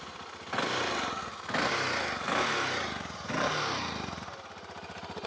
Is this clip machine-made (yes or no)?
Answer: no